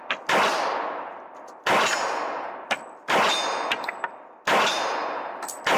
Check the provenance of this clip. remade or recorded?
recorded